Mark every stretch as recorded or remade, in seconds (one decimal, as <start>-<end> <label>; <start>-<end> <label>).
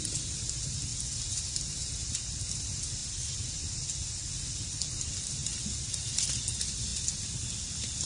0.0-8.1 recorded